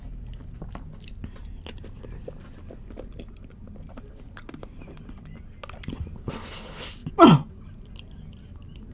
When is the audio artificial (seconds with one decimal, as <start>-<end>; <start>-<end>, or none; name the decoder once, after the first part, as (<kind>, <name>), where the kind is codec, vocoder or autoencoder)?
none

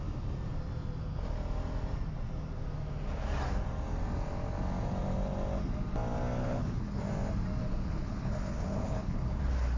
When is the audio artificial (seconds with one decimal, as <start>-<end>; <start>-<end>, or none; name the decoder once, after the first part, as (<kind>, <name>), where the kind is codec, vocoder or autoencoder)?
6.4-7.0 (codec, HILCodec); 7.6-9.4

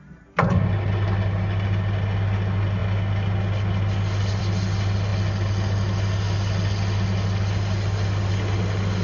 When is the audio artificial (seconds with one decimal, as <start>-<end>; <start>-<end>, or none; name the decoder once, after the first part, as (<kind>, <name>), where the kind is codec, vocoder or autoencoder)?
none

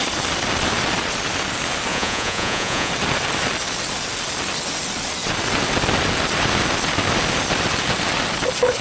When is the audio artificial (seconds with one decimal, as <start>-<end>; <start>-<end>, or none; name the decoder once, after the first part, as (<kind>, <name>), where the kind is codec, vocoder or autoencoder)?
1.9-2.9 (vocoder, Vocos)

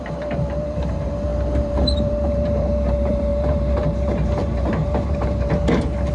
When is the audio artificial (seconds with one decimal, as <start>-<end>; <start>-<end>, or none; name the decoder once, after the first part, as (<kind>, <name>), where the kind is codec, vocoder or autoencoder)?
0.0-6.1 (vocoder, BigVGAN v2)

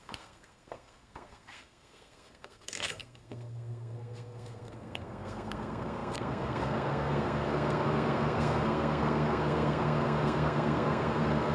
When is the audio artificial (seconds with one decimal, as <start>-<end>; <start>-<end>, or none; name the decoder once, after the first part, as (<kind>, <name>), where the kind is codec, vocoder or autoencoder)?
0.0-11.5 (codec, SNAC)

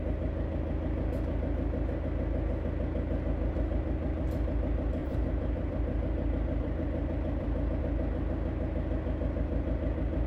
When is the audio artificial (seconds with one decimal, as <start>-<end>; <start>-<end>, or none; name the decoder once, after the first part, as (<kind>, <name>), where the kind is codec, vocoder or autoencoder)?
5.0-7.8 (vocoder, BigVGAN v2)

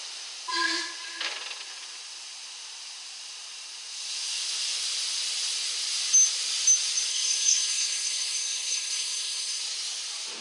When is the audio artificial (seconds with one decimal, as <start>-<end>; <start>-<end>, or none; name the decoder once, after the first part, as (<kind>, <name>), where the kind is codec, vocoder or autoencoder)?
7.1-9.6 (codec, SNAC)